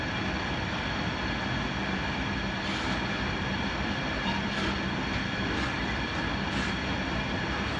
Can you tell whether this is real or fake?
real